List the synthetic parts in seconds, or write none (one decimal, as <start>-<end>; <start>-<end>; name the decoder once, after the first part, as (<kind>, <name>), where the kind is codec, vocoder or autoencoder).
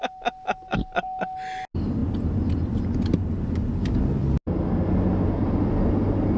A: none